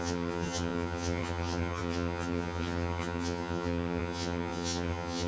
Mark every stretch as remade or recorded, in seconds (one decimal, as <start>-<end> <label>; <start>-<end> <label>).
0.0-5.3 remade